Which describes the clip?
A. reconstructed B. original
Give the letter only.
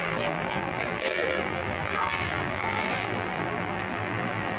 A